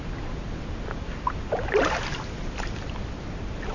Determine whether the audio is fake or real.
real